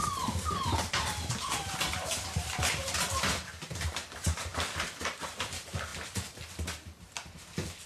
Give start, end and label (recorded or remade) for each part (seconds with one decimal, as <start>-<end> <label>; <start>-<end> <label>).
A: 0.0-4.5 remade; 4.5-5.2 recorded; 5.2-5.9 remade; 5.9-7.9 recorded